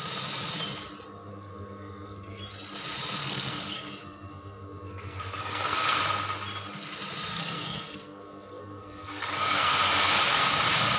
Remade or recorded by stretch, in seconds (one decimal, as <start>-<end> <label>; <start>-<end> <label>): 0.0-1.3 recorded; 1.3-2.4 remade; 2.4-3.2 recorded; 3.2-6.0 remade; 6.0-7.3 recorded; 7.3-10.5 remade; 10.5-11.0 recorded